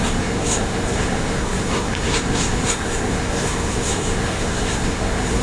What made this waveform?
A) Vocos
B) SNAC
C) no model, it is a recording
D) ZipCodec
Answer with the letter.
B